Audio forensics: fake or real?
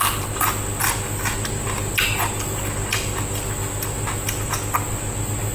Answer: real